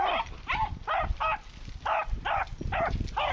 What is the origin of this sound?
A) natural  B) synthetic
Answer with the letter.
A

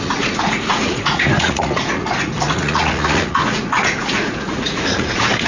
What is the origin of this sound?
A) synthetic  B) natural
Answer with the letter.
A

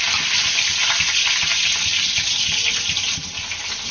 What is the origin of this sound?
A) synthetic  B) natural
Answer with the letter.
B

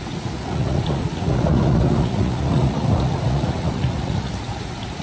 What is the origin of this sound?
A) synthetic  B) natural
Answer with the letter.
A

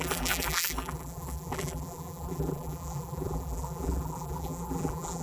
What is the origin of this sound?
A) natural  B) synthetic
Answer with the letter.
B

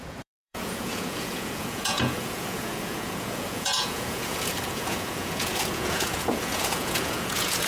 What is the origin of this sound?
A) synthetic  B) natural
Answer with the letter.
A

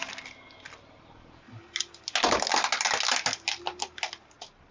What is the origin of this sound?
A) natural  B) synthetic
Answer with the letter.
A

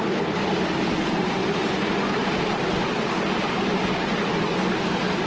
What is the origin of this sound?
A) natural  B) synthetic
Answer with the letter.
A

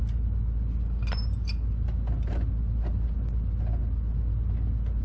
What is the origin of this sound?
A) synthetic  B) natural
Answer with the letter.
B